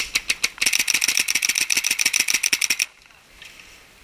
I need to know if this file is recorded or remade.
recorded